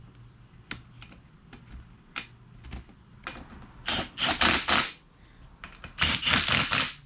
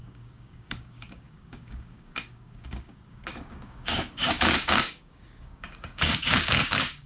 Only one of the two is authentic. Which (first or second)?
first